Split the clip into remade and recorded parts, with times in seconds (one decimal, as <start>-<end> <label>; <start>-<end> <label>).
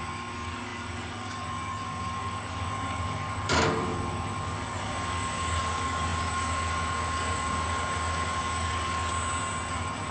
0.0-9.1 remade; 9.1-9.7 recorded; 9.7-10.1 remade